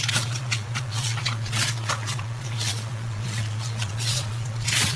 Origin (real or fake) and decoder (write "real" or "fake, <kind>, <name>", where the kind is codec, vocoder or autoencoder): fake, vocoder, Vocos